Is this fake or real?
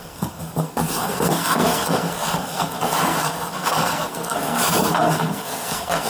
fake